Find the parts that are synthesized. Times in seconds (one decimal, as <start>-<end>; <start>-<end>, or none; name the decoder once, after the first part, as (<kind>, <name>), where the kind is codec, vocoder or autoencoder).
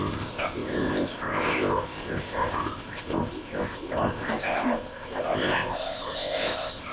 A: 0.0-6.9 (codec, ZipCodec)